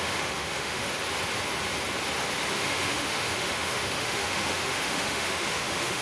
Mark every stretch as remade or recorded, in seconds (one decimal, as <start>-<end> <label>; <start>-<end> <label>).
0.0-0.9 remade; 0.9-2.5 recorded; 2.5-6.0 remade